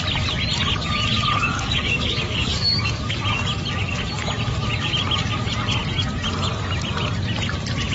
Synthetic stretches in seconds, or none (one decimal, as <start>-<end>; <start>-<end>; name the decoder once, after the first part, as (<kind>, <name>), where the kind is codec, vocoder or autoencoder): 1.5-3.2 (codec, DAC)